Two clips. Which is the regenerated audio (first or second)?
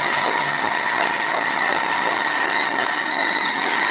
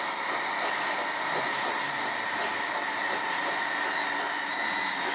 first